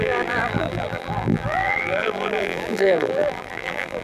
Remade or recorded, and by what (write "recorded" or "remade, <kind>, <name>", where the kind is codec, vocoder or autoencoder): remade, vocoder, BigVGAN v2